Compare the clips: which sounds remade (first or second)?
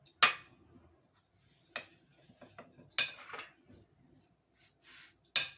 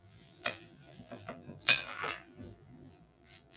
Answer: second